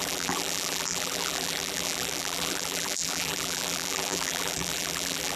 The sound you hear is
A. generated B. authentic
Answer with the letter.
A